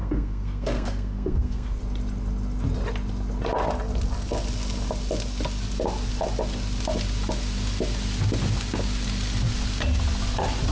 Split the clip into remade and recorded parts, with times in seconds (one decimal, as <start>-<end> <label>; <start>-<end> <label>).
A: 0.0-1.8 remade; 1.8-10.7 recorded